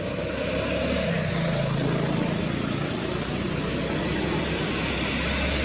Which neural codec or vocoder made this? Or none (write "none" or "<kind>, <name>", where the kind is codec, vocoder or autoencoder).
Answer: none